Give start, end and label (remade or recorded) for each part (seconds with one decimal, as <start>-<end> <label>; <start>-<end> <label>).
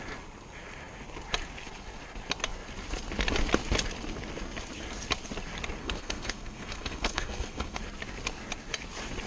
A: 0.0-5.8 recorded; 5.8-7.8 remade; 7.8-9.3 recorded